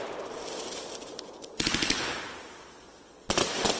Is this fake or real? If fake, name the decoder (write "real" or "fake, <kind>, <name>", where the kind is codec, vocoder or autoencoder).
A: real